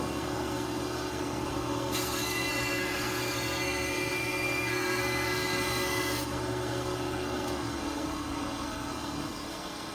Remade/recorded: remade